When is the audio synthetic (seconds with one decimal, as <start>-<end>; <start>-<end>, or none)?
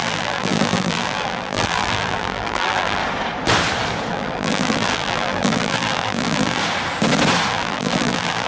0.0-3.0; 4.1-6.6; 7.5-8.5